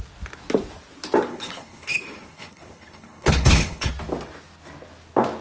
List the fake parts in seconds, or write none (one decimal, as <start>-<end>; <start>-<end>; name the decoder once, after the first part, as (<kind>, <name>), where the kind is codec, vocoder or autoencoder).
1.3-3.9 (codec, HILCodec)